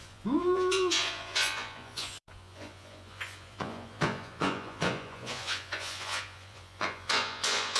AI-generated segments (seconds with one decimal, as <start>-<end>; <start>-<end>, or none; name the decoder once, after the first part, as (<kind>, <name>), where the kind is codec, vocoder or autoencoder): 0.0-7.8 (vocoder, Vocos)